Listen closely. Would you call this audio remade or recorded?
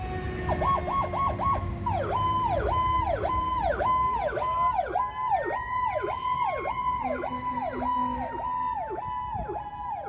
recorded